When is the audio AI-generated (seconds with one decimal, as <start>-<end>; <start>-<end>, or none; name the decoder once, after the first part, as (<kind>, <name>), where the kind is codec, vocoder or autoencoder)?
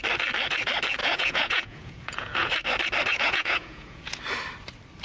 1.0-2.5 (vocoder, Vocos); 3.1-4.2